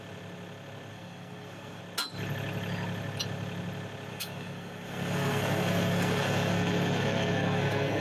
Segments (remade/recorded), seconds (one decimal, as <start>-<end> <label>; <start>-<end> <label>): 0.0-0.9 recorded; 0.9-1.8 remade; 1.8-4.1 recorded; 4.1-8.0 remade